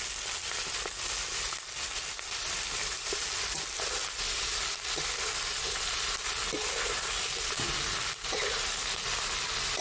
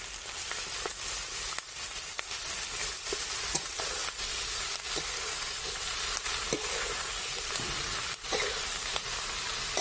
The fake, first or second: second